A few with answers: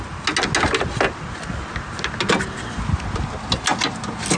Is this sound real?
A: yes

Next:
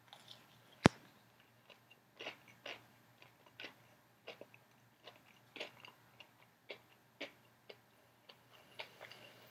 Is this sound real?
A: yes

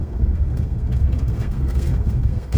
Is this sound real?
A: no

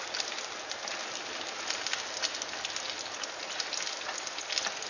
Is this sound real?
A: yes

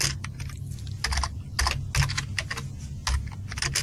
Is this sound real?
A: yes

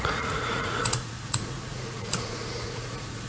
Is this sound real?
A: no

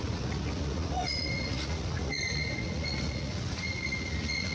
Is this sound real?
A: no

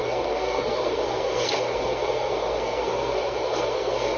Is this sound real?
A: no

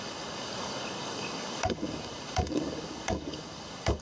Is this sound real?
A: no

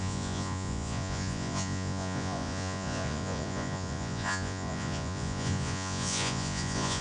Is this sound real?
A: no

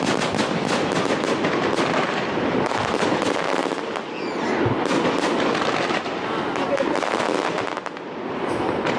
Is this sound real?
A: yes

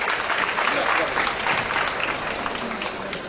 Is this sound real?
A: yes